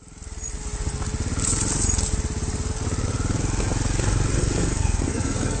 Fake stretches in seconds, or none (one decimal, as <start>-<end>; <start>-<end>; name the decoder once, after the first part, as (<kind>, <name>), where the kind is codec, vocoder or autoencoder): 4.4-5.6 (codec, SNAC)